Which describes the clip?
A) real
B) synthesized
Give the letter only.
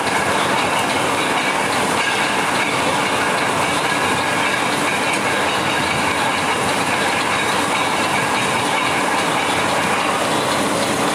A